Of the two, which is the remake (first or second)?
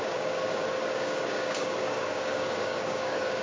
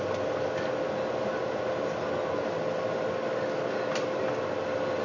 first